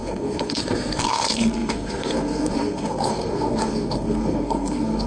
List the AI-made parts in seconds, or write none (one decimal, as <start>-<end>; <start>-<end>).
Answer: 0.0-5.1